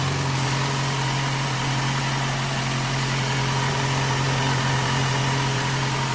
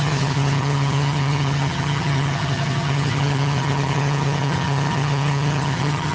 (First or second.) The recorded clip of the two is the first